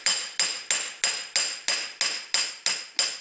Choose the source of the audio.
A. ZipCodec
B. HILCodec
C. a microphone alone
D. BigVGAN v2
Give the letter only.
C